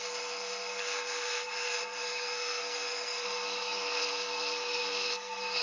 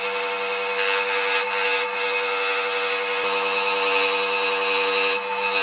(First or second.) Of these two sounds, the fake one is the first